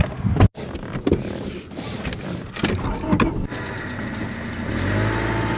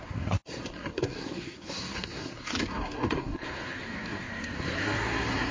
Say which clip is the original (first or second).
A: first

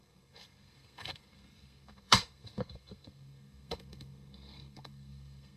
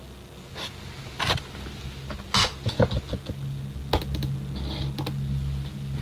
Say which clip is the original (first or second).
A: second